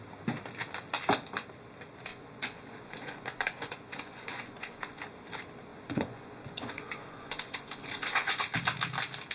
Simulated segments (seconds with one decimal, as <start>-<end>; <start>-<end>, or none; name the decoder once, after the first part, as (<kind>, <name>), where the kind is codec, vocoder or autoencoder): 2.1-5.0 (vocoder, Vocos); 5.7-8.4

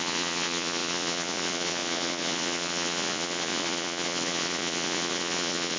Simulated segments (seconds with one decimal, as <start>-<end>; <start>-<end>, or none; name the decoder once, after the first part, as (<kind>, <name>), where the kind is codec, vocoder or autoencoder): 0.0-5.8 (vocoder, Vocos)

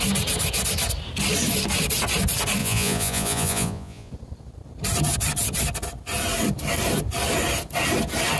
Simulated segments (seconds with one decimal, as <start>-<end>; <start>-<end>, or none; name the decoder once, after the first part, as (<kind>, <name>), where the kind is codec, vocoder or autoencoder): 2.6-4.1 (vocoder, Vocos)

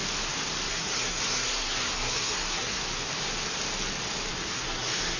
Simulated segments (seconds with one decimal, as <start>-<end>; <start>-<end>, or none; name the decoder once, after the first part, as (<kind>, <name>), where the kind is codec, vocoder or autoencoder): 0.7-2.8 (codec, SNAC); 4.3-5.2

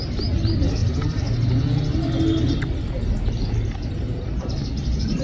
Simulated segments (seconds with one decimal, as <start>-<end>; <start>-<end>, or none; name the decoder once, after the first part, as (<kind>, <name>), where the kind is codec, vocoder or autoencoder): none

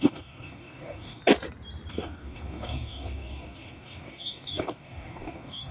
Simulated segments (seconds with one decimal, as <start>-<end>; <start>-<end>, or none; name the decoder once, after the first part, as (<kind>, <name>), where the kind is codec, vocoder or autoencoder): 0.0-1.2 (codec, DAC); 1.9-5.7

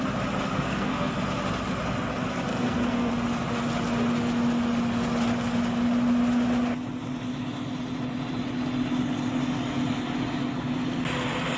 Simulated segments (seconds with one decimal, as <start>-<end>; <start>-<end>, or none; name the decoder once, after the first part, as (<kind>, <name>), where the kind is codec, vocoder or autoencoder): 0.5-1.1 (codec, SNAC); 2.5-3.1